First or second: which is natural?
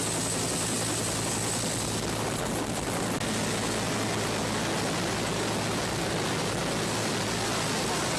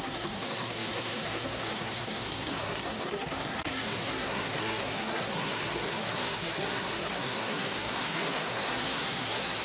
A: first